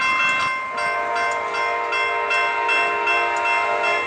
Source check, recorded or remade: recorded